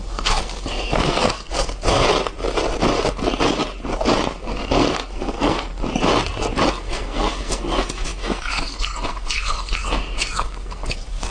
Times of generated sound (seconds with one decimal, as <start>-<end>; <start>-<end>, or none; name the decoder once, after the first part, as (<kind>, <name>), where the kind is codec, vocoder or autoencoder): 0.0-2.1 (codec, SNAC); 4.4-5.7; 6.7-11.3